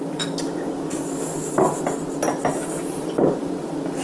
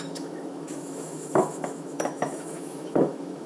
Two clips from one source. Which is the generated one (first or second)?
second